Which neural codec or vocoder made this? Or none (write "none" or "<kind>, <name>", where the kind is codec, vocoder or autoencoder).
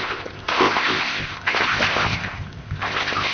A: codec, ZipCodec